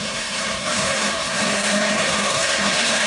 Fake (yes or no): yes